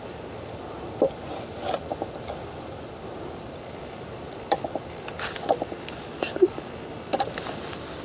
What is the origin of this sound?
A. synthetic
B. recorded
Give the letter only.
B